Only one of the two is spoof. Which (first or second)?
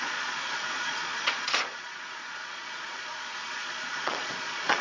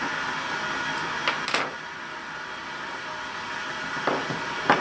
first